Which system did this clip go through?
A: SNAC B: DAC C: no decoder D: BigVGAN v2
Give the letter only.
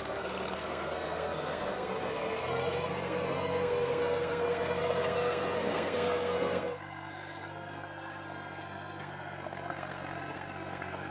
A